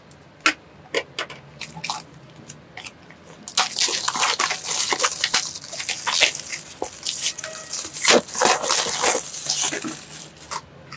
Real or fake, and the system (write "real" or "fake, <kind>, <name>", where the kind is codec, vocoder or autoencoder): real